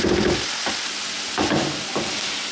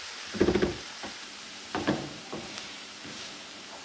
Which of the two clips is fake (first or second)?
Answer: second